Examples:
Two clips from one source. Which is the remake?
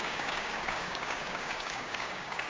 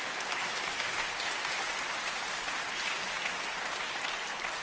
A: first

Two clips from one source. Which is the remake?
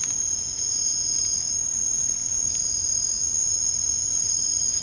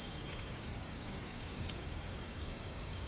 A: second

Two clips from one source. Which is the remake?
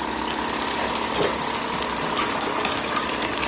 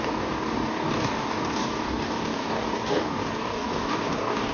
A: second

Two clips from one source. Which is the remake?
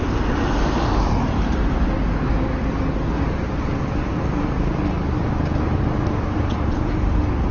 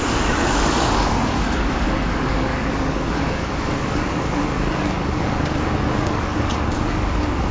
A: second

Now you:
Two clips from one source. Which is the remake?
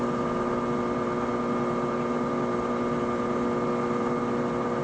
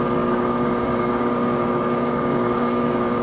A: second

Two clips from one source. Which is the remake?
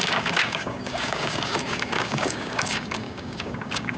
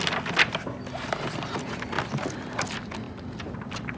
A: first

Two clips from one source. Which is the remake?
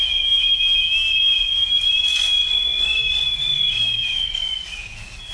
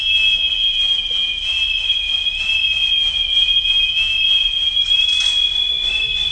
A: first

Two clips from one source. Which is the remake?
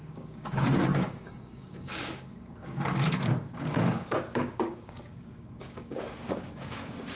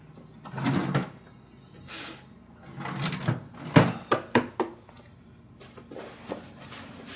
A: first